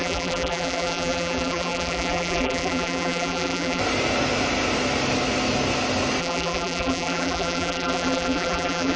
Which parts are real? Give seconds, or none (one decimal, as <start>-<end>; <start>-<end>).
3.8-6.2